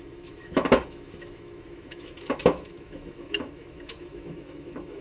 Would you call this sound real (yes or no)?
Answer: no